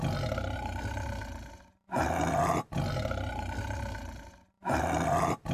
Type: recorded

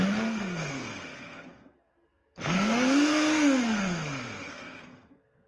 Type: remade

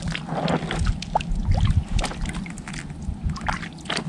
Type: recorded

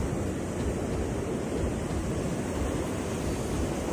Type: recorded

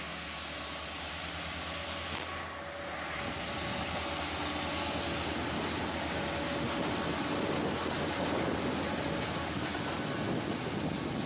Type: recorded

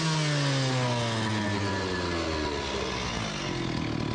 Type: recorded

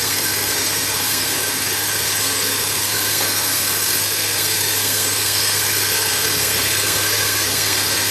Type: remade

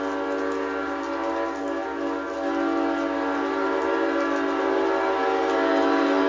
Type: recorded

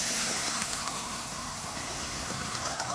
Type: remade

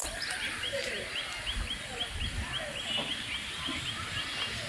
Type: recorded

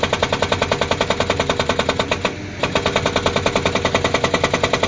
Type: recorded